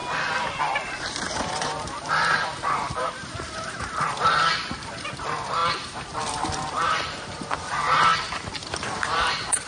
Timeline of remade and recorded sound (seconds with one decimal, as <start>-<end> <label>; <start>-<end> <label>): 0.0-0.6 recorded; 0.6-9.7 remade